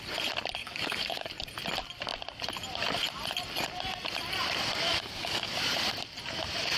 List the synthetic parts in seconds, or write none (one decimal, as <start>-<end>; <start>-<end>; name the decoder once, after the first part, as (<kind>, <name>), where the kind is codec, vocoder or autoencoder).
0.6-1.3 (codec, DAC); 4.9-5.6